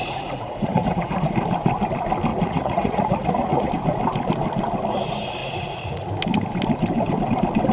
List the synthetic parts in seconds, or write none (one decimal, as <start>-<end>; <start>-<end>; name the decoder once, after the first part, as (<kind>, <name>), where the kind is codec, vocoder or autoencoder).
0.0-1.3 (vocoder, Vocos); 2.3-3.7; 5.4-6.1